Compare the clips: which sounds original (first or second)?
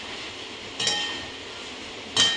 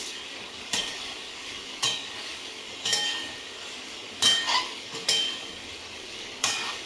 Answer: first